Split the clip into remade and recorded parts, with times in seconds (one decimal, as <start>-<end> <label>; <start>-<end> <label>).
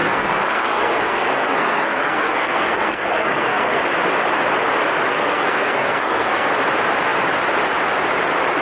0.0-3.8 remade; 3.8-5.1 recorded; 5.1-6.5 remade; 6.5-8.6 recorded